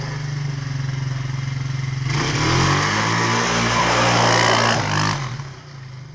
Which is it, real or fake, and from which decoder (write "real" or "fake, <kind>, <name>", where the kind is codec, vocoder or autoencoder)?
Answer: real